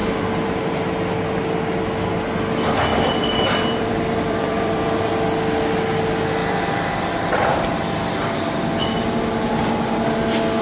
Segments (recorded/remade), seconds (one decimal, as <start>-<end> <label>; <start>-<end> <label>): 0.0-0.8 remade; 0.8-2.9 recorded; 2.9-5.1 remade; 5.1-6.4 recorded; 6.4-8.8 remade; 8.8-10.6 recorded